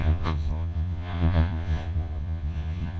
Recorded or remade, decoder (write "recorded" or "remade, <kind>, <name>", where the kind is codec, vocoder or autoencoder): remade, vocoder, Vocos